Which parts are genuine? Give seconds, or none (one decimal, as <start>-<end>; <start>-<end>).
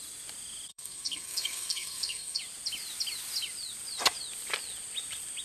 0.0-0.7; 2.4-5.4